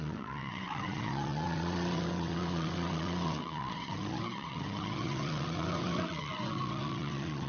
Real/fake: fake